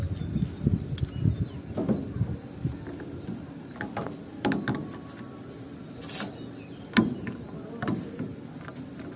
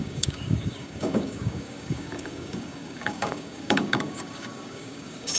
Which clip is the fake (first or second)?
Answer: second